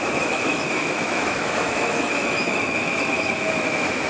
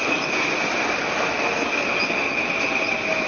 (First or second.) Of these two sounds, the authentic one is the second